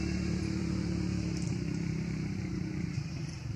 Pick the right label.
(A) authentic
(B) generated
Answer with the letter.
B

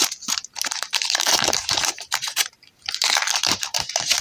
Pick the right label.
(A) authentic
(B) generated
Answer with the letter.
B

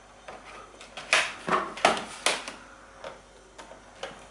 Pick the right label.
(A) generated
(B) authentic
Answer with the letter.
B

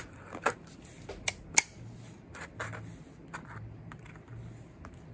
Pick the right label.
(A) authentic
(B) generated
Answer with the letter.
A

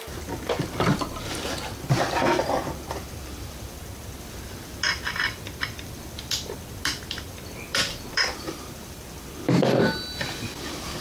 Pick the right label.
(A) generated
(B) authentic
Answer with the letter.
A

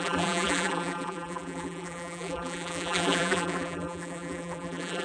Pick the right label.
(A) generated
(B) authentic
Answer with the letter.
A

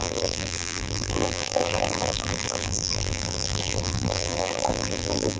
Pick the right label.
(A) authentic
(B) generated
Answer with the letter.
B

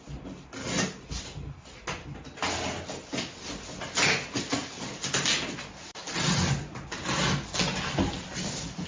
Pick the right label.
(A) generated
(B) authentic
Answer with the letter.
B